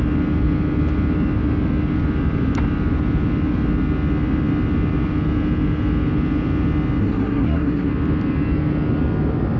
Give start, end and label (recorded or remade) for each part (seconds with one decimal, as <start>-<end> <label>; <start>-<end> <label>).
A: 0.0-7.0 recorded; 7.0-7.9 remade; 7.9-9.6 recorded